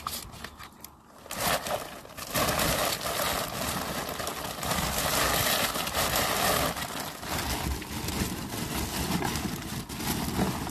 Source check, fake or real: real